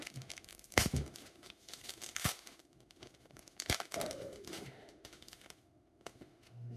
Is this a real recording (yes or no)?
no